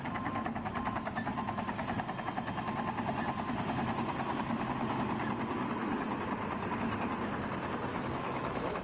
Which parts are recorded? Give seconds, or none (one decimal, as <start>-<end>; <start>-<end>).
0.0-7.9